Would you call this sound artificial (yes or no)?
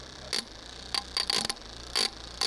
no